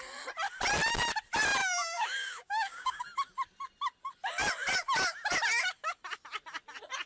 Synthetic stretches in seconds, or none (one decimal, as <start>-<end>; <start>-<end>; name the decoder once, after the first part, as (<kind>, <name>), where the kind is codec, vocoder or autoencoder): 1.6-3.0 (codec, DAC)